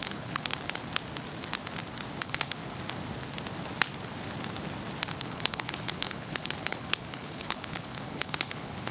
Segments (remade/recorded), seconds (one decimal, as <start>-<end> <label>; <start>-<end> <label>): 0.0-0.5 remade; 0.5-2.2 recorded; 2.2-2.6 remade; 2.6-5.2 recorded; 5.2-8.9 remade